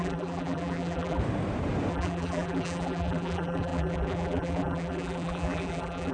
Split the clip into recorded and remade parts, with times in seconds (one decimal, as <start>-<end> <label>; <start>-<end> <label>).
0.0-1.2 remade; 1.2-1.9 recorded; 1.9-6.1 remade